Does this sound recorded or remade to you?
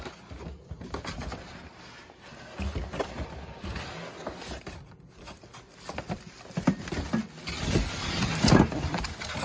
recorded